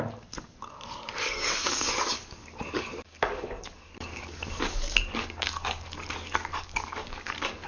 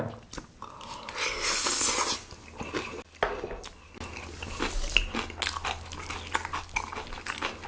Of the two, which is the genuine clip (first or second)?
second